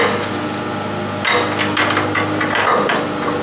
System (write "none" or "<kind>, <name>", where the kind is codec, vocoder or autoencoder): none